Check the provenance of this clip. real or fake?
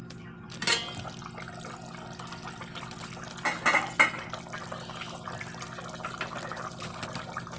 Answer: real